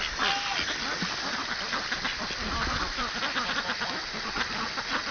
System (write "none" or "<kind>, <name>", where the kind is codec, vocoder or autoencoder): none